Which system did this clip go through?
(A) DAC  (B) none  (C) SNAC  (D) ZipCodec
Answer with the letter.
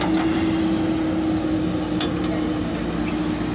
B